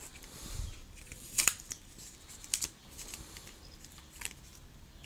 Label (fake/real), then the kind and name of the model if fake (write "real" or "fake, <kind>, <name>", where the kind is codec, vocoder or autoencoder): fake, vocoder, BigVGAN v2